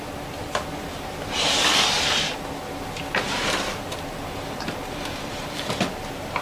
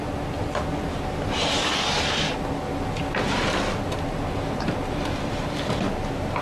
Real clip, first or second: second